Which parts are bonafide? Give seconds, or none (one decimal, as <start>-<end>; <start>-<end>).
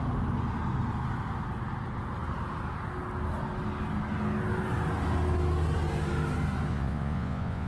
0.0-6.7